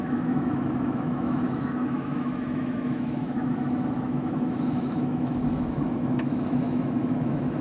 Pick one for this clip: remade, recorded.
remade